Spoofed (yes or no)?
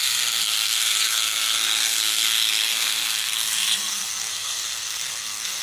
yes